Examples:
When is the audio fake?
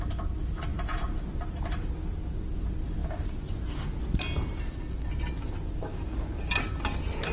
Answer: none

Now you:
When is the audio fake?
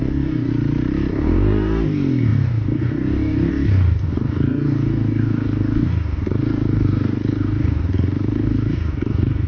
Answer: 0.0-0.5; 1.1-9.5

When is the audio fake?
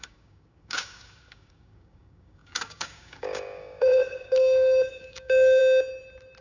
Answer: 0.0-5.6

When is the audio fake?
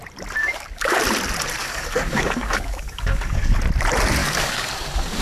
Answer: 0.4-1.0; 1.6-3.5; 4.2-5.2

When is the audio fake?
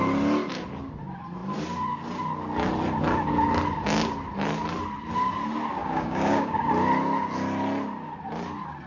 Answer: 5.8-6.7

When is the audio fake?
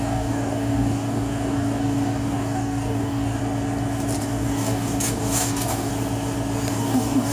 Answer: 0.0-3.4; 4.2-5.9; 6.7-7.3